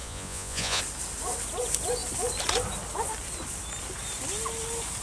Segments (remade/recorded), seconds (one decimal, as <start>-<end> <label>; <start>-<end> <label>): 0.0-0.8 remade; 0.8-5.0 recorded